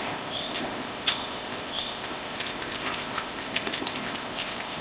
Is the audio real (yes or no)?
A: no